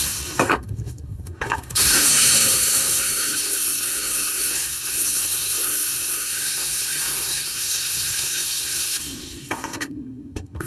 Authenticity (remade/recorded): remade